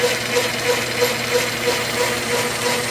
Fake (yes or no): no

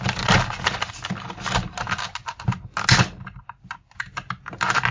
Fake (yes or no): no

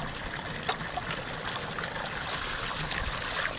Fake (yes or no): no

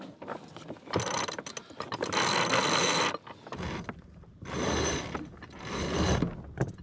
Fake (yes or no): no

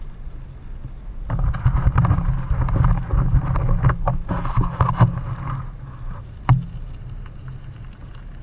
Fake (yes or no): no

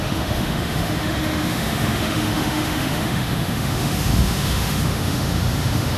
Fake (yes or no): yes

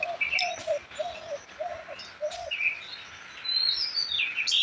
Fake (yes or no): no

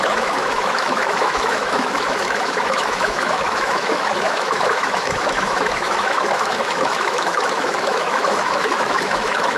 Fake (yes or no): yes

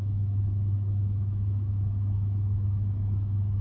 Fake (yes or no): yes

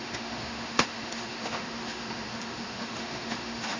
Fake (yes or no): yes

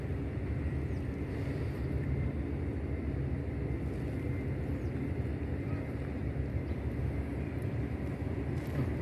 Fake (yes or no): no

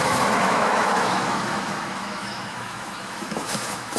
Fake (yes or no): yes